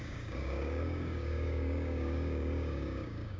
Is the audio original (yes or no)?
no